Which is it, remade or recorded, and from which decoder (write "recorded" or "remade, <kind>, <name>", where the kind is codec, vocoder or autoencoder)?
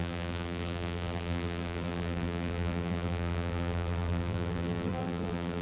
remade, vocoder, BigVGAN v2